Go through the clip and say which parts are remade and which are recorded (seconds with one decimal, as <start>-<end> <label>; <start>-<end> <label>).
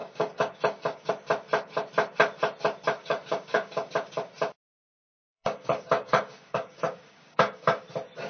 0.0-1.1 remade; 1.1-3.0 recorded; 3.0-3.9 remade; 3.9-4.8 recorded; 4.8-7.8 remade; 7.8-8.3 recorded